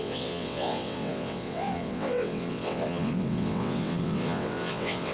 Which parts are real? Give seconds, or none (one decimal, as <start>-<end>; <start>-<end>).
none